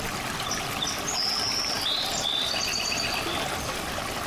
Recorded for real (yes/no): yes